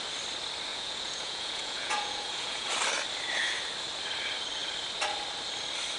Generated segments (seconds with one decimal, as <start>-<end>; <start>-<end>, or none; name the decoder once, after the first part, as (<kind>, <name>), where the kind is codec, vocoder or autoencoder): 0.7-2.7 (vocoder, Vocos)